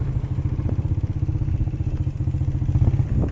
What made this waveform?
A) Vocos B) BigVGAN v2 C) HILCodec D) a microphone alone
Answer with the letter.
D